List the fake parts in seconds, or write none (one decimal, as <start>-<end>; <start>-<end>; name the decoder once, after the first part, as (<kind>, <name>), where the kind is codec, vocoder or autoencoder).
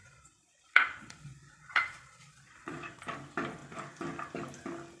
0.0-3.0 (vocoder, Vocos)